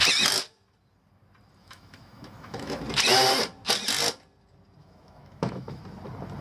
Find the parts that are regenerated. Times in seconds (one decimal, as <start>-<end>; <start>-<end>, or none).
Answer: 1.6-2.8; 4.8-5.8